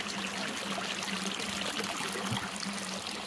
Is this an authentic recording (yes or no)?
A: yes